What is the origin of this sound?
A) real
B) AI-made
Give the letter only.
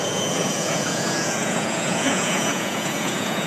B